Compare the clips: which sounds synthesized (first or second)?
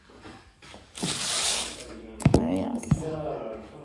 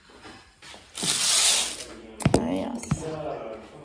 first